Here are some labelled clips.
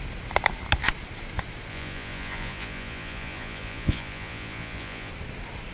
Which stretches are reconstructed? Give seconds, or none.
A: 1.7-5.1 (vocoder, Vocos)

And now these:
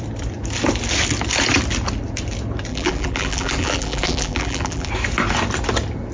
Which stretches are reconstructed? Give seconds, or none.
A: 2.7-4.9 (vocoder, BigVGAN v2)

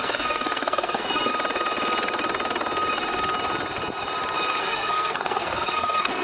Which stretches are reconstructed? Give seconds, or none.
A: 0.0-1.3 (codec, SNAC); 4.6-6.2

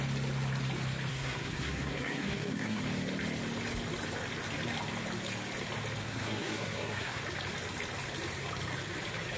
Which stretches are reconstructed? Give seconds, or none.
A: 1.1-2.8 (codec, SNAC); 6.0-7.2

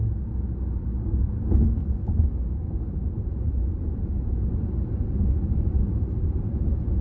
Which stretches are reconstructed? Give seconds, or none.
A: none

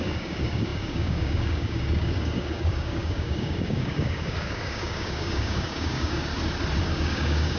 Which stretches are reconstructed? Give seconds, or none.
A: 0.0-6.3 (codec, DAC); 6.8-7.6

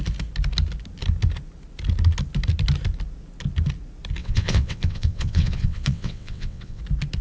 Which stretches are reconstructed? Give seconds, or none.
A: 4.2-6.8 (vocoder, WaveNeXt)